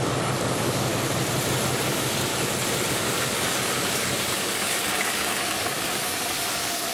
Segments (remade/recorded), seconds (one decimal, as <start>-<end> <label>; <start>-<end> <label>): 0.0-0.9 remade; 0.9-1.9 recorded; 1.9-2.3 remade; 2.3-2.9 recorded; 2.9-6.9 remade